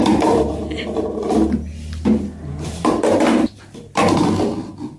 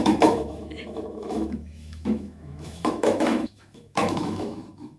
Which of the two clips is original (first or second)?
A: first